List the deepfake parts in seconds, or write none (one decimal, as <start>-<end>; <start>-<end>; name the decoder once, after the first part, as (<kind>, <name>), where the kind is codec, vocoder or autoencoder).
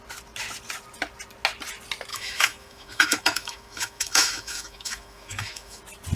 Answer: 2.1-5.8 (autoencoder, DAC-VAE)